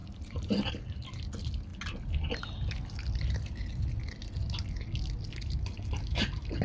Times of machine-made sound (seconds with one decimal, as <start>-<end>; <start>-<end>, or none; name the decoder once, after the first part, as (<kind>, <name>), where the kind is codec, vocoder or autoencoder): 0.0-0.7 (vocoder, BigVGAN v2)